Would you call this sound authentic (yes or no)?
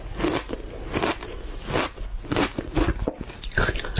yes